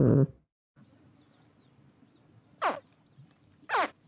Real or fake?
real